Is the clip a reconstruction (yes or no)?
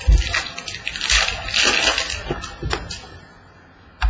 no